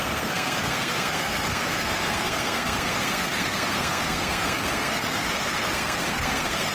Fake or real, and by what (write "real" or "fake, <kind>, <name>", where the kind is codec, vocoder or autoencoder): fake, codec, SNAC